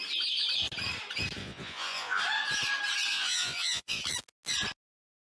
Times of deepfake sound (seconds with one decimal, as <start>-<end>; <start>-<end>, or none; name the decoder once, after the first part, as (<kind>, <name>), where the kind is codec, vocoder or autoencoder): 1.4-2.2 (vocoder, Vocos); 3.1-4.0